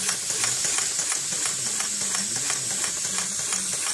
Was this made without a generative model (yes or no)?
yes